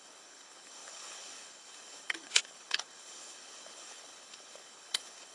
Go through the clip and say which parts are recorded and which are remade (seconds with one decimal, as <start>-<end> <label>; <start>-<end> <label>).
0.0-5.3 remade